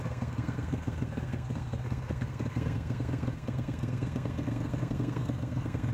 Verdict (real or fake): fake